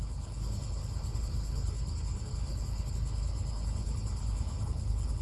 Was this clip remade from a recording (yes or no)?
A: yes